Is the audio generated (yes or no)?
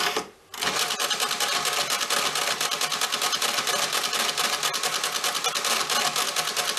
no